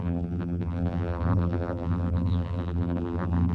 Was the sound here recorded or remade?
remade